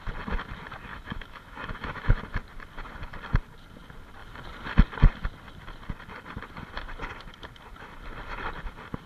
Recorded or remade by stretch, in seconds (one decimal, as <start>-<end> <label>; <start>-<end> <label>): 0.0-0.9 recorded; 0.9-2.2 remade; 2.2-9.1 recorded